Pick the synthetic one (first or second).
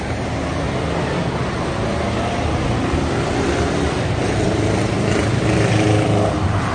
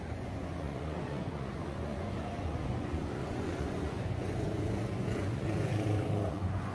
second